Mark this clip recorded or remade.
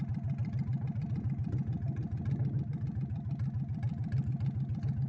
recorded